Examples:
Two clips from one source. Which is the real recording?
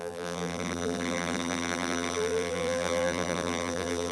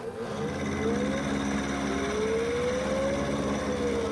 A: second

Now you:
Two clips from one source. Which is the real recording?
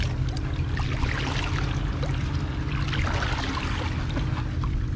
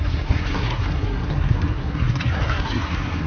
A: first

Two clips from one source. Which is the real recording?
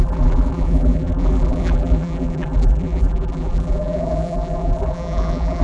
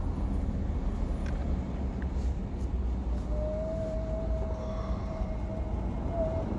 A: second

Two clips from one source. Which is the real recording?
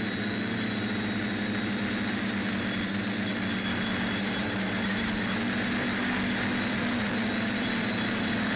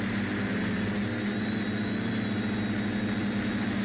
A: second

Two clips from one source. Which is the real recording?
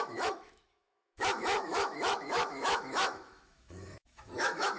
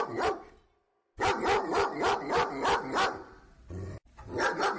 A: second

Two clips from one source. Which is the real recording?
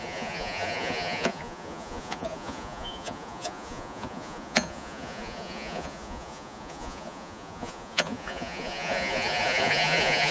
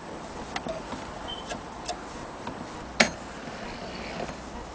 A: second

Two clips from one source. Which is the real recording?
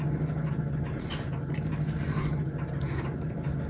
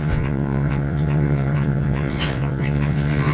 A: first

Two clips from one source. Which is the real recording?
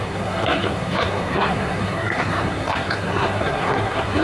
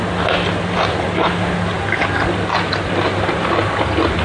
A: second